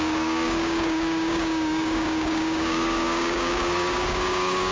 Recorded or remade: remade